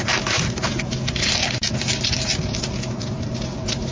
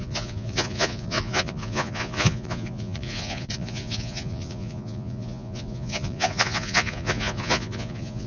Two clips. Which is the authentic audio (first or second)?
first